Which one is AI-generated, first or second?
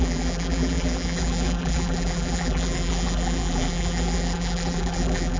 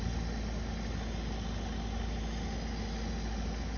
first